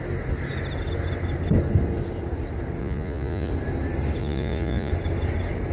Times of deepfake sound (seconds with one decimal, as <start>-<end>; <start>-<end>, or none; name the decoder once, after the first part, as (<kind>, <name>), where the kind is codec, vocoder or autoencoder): 2.8-3.5 (vocoder, Vocos); 4.2-4.9